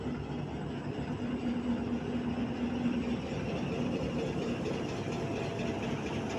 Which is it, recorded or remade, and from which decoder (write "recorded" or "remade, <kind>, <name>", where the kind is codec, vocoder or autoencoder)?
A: recorded